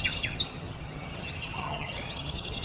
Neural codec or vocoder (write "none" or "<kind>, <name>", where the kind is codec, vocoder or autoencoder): vocoder, HiFi-GAN